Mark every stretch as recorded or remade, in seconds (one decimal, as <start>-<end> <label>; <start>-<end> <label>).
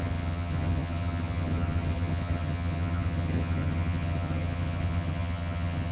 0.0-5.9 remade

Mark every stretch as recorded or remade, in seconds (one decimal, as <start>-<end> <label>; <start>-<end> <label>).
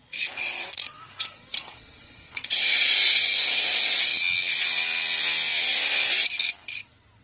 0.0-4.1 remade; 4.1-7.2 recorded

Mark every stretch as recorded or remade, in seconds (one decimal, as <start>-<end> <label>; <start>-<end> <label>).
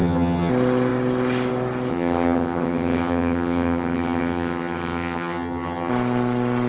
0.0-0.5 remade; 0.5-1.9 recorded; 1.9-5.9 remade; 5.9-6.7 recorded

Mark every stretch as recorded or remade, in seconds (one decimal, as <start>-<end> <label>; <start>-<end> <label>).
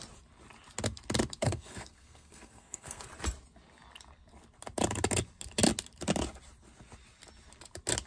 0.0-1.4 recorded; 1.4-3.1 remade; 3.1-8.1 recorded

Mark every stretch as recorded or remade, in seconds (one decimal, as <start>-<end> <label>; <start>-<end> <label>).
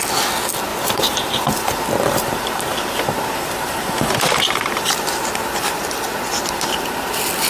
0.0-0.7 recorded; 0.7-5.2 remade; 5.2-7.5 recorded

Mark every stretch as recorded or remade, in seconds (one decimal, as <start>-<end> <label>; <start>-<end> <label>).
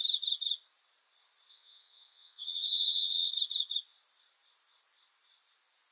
0.0-1.5 recorded; 1.5-3.3 remade; 3.3-5.9 recorded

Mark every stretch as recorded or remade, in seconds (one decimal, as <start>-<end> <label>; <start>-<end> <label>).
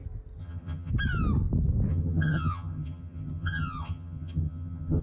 0.0-0.4 recorded; 0.4-0.9 remade; 0.9-1.9 recorded; 1.9-5.0 remade